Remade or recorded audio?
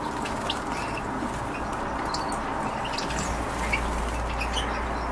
recorded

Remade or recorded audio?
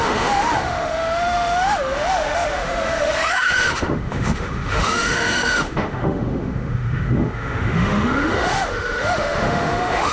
remade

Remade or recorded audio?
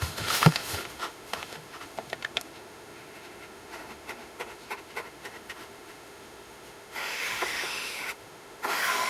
remade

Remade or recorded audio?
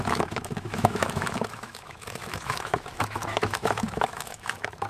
remade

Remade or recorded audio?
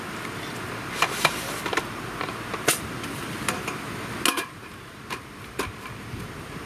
recorded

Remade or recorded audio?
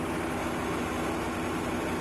recorded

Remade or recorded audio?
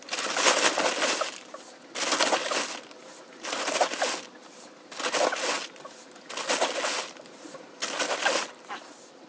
recorded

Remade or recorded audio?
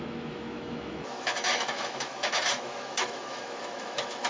remade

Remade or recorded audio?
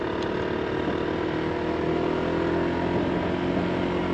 recorded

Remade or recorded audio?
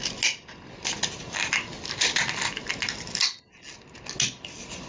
recorded